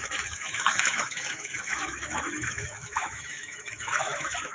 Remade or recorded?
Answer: remade